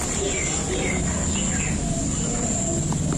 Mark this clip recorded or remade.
recorded